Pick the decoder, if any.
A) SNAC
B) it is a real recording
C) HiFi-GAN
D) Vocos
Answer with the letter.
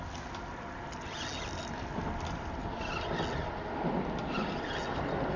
B